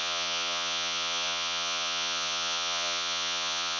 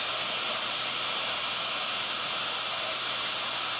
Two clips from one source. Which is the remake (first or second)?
first